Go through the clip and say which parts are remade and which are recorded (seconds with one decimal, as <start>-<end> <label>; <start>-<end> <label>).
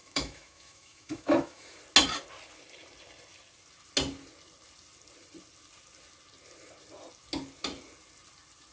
0.0-1.8 remade; 1.8-8.7 recorded